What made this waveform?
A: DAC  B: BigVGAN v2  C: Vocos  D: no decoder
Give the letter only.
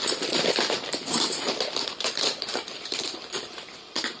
B